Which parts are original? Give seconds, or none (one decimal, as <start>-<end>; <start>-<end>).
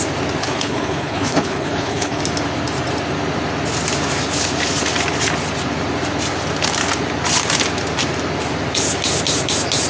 0.0-0.4; 2.2-9.9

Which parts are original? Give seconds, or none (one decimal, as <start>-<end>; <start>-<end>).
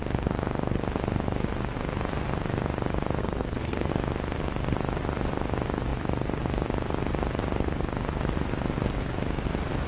0.0-3.2; 3.9-9.9